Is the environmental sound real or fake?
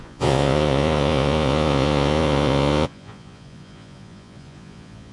fake